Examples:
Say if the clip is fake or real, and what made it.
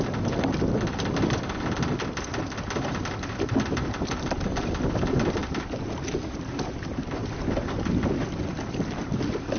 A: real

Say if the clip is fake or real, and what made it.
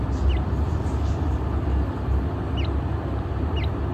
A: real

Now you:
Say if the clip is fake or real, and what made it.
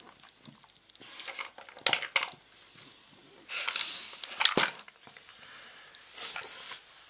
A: real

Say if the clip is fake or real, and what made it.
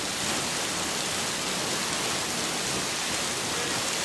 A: real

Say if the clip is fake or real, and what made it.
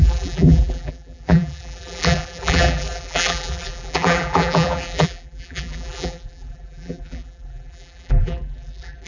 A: fake, vocoder, BigVGAN v2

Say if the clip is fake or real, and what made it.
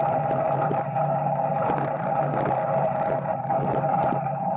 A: fake, vocoder, BigVGAN v2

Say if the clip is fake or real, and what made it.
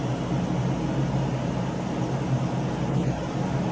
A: real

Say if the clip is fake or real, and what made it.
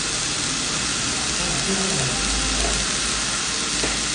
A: real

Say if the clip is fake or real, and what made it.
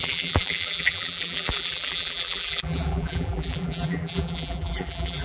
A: fake, vocoder, BigVGAN v2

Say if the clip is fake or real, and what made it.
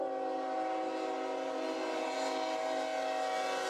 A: real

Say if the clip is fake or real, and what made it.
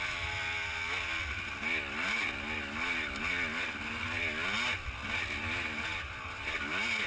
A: real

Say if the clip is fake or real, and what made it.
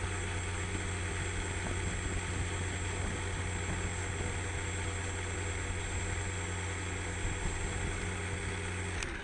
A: real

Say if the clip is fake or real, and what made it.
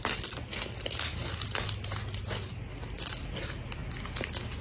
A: real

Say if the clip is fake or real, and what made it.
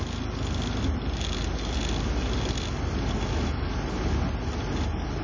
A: real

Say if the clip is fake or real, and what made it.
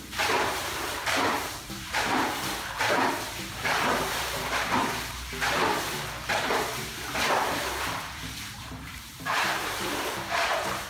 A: fake, vocoder, BigVGAN v2